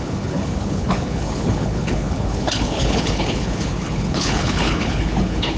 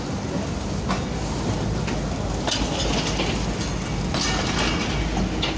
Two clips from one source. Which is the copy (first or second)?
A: first